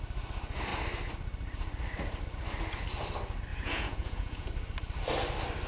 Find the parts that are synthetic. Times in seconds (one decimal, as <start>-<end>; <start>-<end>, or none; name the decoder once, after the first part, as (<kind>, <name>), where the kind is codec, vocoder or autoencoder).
3.5-4.5 (vocoder, Vocos)